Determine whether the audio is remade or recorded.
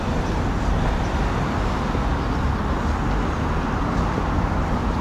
recorded